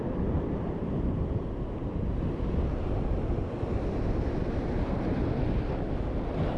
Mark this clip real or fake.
real